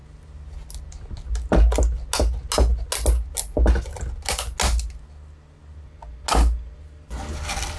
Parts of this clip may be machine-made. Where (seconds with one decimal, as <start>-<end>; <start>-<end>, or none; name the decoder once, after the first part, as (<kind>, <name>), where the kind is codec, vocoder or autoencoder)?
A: none